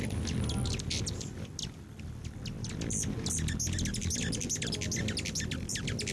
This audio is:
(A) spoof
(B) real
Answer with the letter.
B